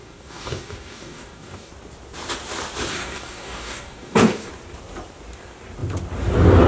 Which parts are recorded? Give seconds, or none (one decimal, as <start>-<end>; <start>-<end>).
1.7-2.9; 4.5-6.7